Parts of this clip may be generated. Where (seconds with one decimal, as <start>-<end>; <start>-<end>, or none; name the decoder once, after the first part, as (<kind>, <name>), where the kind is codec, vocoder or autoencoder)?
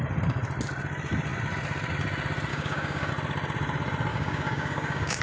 2.5-3.1 (codec, DAC); 4.1-5.2